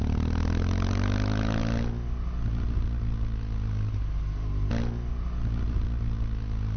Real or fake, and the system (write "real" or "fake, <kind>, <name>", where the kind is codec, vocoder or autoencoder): real